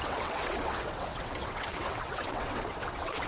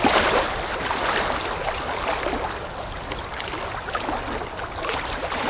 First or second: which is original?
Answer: second